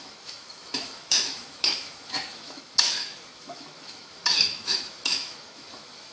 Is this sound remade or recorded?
remade